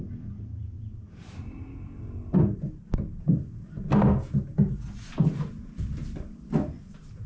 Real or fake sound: real